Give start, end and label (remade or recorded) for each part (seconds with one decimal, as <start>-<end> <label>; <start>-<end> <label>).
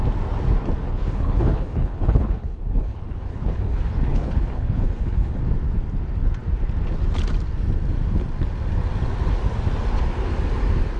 0.0-0.9 recorded; 0.9-5.4 remade; 5.4-11.0 recorded